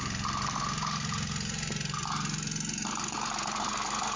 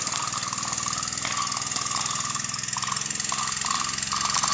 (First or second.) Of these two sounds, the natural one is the second